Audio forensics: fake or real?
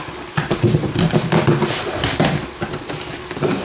real